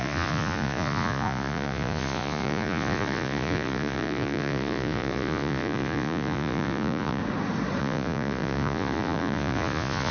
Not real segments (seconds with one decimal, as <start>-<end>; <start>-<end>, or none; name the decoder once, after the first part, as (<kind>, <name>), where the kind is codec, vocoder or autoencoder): 0.0-7.2 (vocoder, Vocos); 7.8-10.1